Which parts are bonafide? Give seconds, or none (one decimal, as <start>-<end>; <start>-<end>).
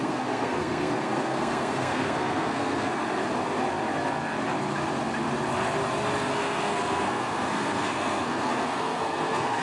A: 3.0-6.3